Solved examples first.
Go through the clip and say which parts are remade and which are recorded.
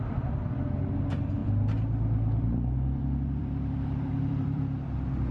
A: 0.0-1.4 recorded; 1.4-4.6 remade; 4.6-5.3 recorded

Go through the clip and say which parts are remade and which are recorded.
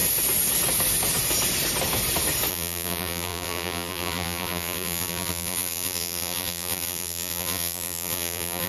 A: 0.0-2.5 recorded; 2.5-8.7 remade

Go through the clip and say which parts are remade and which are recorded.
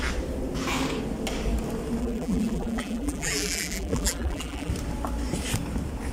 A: 0.0-2.0 recorded; 2.0-4.7 remade; 4.7-6.1 recorded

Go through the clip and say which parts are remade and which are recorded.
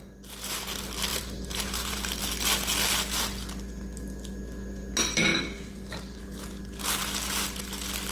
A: 0.0-1.1 recorded; 1.1-2.2 remade; 2.2-5.3 recorded; 5.3-6.2 remade; 6.2-8.1 recorded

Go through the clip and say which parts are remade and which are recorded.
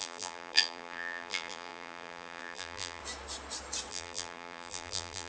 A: 0.0-3.0 remade; 3.0-3.9 recorded; 3.9-5.3 remade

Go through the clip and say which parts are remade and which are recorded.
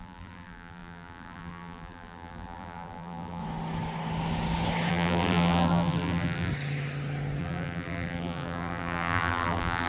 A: 0.0-3.4 remade; 3.4-4.9 recorded; 4.9-6.5 remade; 6.5-7.4 recorded; 7.4-9.9 remade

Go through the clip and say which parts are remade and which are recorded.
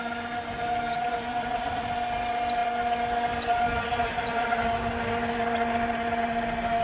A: 0.0-6.8 recorded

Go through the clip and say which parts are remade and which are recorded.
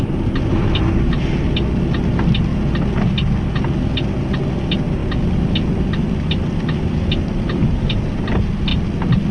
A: 0.0-9.3 recorded